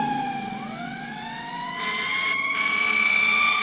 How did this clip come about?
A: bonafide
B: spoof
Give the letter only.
B